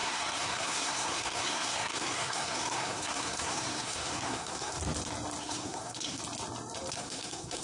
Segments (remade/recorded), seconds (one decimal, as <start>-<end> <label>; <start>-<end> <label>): 0.0-4.8 remade; 4.8-5.4 recorded; 5.4-6.2 remade; 6.2-6.9 recorded; 6.9-7.6 remade